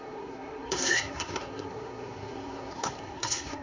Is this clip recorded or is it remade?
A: remade